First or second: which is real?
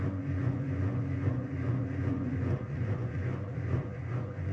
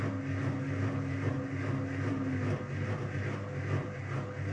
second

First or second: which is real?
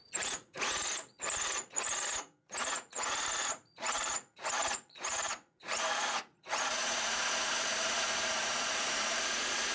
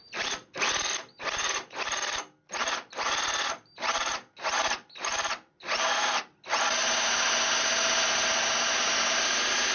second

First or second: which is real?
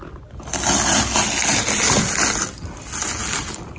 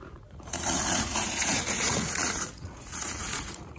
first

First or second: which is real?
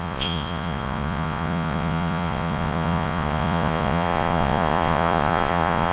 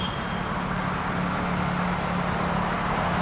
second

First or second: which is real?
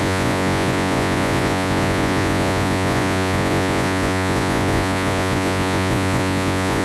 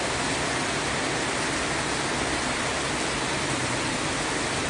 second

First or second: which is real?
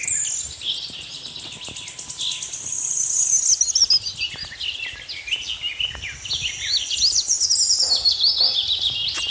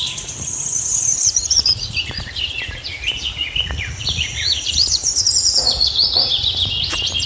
first